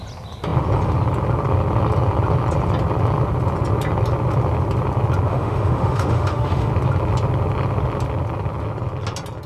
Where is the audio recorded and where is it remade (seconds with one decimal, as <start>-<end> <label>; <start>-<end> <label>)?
0.0-5.3 recorded; 5.3-6.7 remade; 6.7-9.5 recorded